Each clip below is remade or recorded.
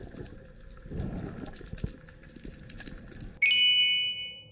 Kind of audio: recorded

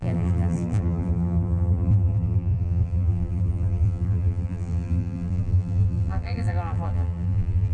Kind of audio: remade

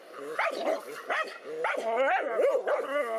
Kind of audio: recorded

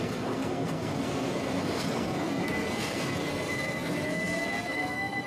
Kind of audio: remade